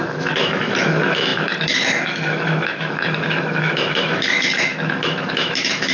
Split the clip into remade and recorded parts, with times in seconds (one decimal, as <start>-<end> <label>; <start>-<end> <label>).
0.0-5.9 remade